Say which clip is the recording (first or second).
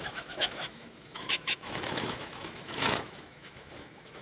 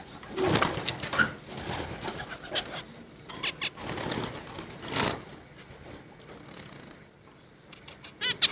second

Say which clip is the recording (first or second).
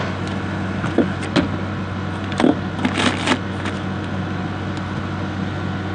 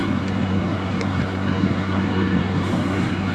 first